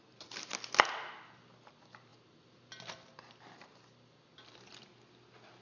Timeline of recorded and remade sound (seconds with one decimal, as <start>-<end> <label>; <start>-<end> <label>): 0.0-5.6 recorded

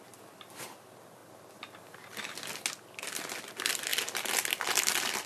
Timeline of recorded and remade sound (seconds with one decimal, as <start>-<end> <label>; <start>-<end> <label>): 0.0-5.3 recorded

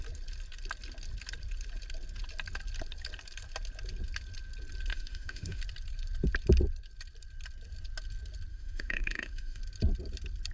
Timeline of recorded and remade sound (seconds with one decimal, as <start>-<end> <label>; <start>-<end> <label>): 0.0-4.9 recorded; 4.9-5.6 remade; 5.6-8.5 recorded; 8.5-9.6 remade; 9.6-10.5 recorded

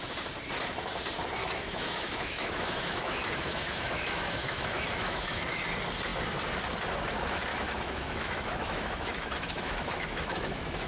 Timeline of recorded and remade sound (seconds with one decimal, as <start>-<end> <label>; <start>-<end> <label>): 0.0-1.4 recorded; 1.4-5.6 remade; 5.6-7.5 recorded; 7.5-10.9 remade

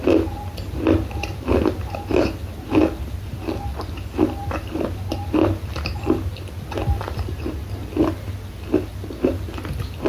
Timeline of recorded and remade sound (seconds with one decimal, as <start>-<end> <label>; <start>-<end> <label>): 0.0-10.1 recorded